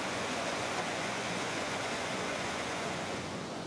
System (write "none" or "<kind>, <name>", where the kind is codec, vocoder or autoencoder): vocoder, Vocos